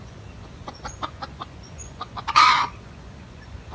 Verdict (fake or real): fake